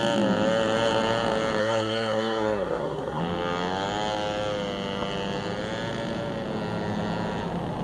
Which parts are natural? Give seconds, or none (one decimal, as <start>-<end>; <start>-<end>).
0.0-1.6; 3.2-7.8